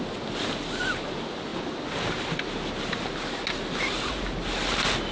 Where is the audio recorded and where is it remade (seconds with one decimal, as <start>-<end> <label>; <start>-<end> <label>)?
0.0-5.1 recorded